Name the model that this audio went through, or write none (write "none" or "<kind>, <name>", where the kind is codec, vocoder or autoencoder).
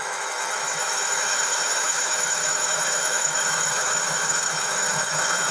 autoencoder, DAC-VAE